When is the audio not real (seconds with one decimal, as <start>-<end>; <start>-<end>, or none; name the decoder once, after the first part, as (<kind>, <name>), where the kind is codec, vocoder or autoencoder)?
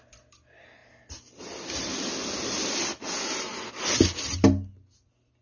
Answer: none